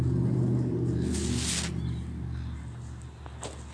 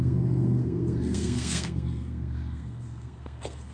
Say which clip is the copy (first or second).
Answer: second